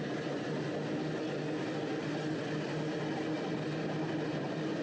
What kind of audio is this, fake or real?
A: real